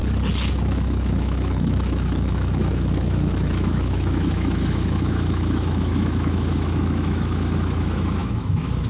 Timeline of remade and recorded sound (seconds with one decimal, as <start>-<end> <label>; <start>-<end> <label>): 0.0-0.5 recorded; 0.5-8.9 remade